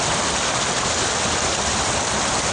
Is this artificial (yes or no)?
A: no